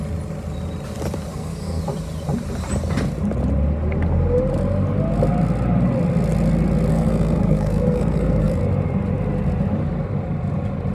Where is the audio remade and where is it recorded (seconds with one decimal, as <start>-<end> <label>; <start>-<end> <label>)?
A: 0.0-1.3 recorded; 1.3-1.8 remade; 1.8-6.9 recorded; 6.9-8.6 remade; 8.6-10.9 recorded